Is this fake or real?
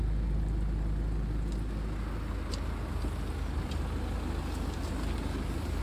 real